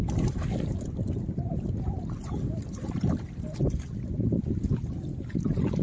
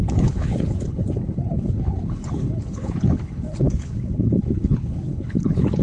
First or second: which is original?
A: first